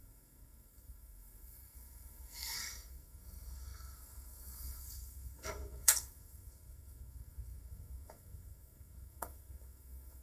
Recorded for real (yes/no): no